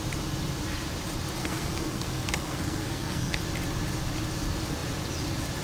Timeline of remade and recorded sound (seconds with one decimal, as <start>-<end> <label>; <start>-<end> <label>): 0.0-1.4 recorded; 1.4-3.4 remade; 3.4-5.6 recorded